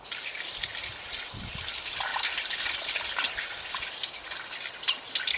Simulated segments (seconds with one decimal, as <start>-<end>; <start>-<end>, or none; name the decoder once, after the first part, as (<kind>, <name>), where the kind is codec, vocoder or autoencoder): none